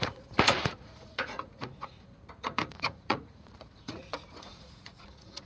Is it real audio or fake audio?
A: fake